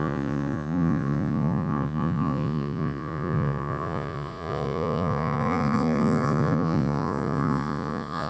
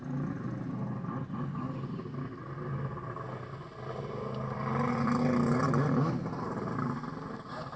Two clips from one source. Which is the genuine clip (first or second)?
second